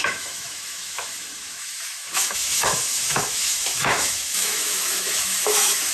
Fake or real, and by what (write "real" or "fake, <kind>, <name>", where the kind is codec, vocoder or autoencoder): fake, autoencoder, DAC-VAE